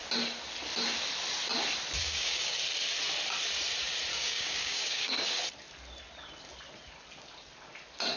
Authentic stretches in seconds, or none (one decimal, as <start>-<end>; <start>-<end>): 0.0-2.0; 2.6-4.1; 5.4-8.2